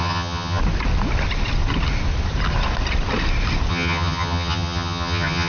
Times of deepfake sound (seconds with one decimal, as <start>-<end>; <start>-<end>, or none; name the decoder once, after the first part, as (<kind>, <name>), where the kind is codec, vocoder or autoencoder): 0.0-0.6 (vocoder, HiFi-GAN); 3.7-5.5